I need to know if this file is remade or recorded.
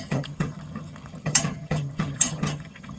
remade